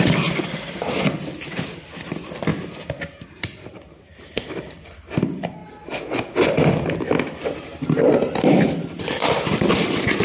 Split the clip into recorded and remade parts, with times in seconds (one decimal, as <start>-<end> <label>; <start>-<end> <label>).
0.0-2.5 remade; 2.5-4.4 recorded; 4.4-5.6 remade; 5.6-8.7 recorded; 8.7-10.2 remade